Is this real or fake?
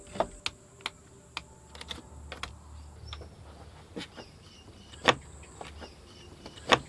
real